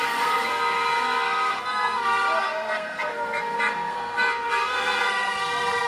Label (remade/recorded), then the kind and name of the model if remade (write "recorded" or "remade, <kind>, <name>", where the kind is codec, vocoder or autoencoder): remade, codec, SNAC